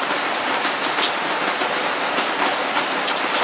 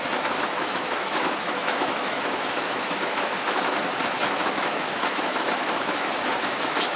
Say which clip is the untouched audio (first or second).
first